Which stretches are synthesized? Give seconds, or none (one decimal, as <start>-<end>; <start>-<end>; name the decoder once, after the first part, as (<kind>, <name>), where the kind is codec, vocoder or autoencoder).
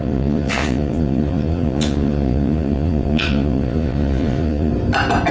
0.0-4.7 (vocoder, Vocos)